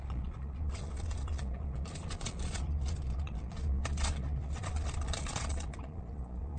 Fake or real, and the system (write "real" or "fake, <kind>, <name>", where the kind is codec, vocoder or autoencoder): fake, vocoder, Vocos